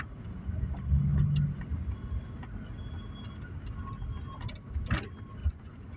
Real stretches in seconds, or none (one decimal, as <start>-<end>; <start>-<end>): 0.0-5.4